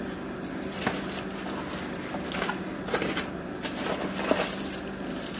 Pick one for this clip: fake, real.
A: real